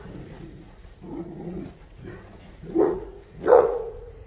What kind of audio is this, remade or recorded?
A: remade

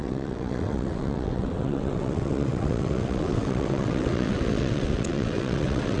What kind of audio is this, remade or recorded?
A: remade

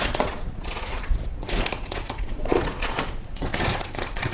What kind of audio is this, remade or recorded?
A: remade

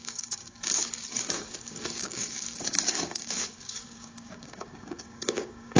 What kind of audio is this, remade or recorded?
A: remade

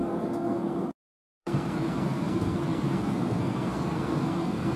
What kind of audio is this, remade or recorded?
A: remade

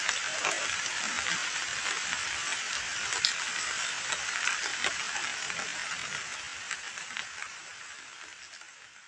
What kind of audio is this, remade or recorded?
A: recorded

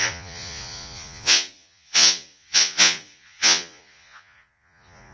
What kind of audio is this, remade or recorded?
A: remade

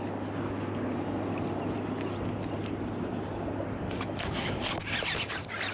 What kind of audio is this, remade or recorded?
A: recorded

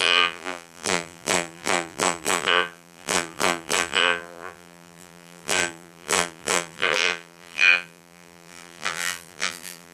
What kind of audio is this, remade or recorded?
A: remade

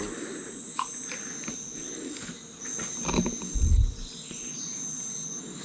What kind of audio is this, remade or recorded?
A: recorded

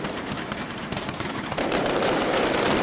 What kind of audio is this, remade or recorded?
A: remade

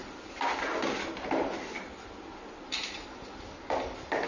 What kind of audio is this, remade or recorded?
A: recorded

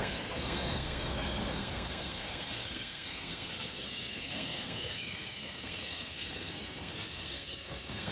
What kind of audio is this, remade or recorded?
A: remade